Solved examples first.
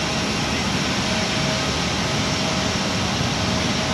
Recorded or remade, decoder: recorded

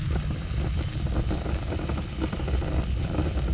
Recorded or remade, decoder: recorded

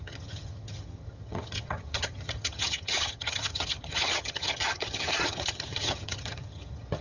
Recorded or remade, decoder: remade, vocoder, HiFi-GAN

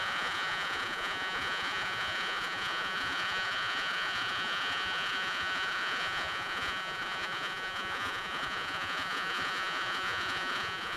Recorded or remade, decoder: remade, vocoder, Vocos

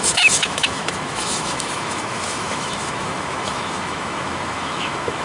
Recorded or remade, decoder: remade, autoencoder, DAC-VAE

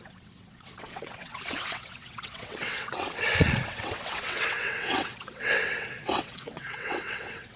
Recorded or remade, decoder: remade, vocoder, WaveNeXt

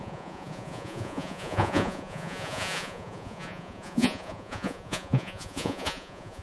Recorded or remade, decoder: remade, vocoder, Vocos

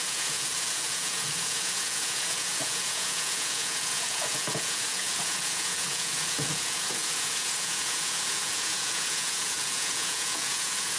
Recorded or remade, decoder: remade, vocoder, Vocos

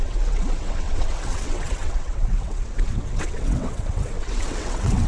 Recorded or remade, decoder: remade, vocoder, WaveNeXt